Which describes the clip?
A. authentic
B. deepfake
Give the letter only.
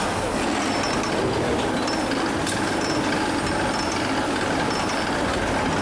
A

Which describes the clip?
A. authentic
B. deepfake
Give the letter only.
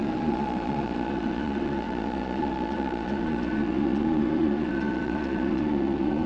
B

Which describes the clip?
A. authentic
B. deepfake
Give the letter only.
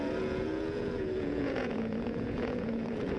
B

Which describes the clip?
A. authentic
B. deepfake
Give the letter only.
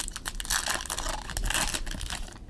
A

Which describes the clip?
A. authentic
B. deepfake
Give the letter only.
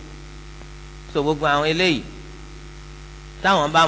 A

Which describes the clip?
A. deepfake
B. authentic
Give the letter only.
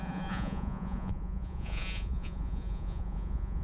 A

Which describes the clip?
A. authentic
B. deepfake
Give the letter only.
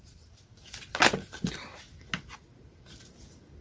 A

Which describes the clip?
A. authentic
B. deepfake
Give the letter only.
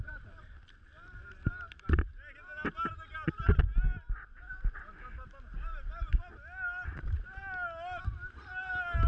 A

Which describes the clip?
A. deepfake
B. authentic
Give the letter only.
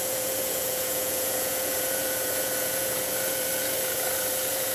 A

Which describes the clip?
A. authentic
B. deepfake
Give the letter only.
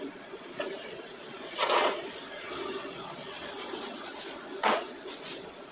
B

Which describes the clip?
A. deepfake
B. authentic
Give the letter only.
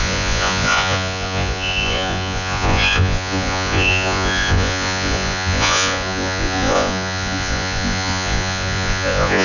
A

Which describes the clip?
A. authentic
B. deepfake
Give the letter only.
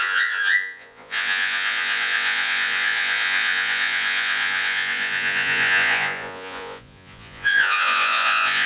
B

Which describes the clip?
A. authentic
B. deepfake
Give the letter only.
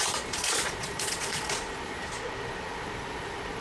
B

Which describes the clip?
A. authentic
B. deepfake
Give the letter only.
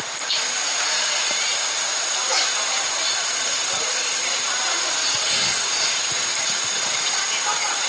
A